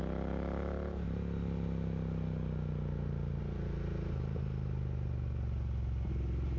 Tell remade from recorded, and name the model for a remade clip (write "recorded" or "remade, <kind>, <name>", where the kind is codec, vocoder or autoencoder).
recorded